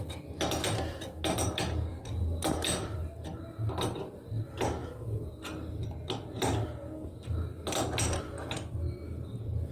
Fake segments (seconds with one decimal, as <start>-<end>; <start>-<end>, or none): none